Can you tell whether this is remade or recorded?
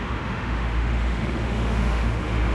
remade